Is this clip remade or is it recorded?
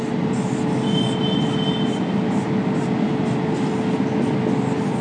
recorded